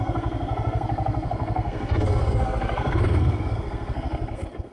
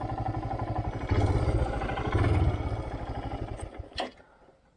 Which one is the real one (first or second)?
second